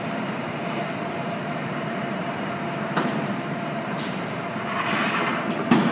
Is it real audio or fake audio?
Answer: fake